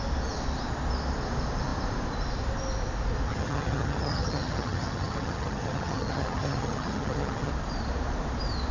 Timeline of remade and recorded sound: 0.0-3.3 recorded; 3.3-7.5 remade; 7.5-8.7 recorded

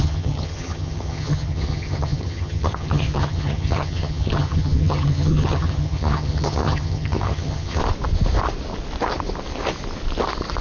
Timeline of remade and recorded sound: 0.0-7.8 remade; 7.8-10.6 recorded

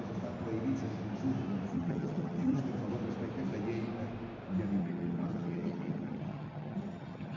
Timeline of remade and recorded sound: 0.0-1.7 recorded; 1.7-2.6 remade; 2.6-4.8 recorded; 4.8-7.4 remade